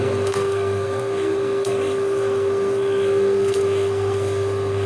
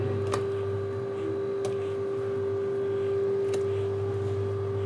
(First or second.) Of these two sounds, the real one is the second